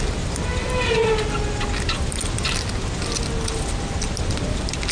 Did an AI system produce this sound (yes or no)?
no